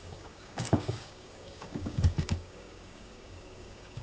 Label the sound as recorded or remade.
remade